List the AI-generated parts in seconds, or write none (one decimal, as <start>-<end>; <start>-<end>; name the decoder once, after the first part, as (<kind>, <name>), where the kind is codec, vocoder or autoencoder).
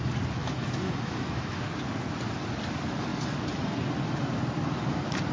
0.4-1.6 (autoencoder, DAC-VAE)